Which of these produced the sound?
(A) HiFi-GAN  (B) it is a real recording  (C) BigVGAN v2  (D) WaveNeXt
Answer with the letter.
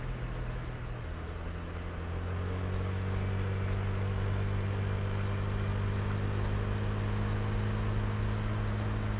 B